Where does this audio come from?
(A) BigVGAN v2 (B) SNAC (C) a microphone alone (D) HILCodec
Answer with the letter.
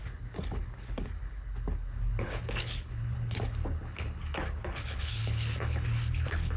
D